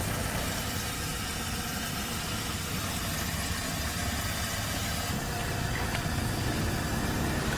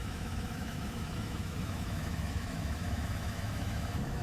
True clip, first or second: first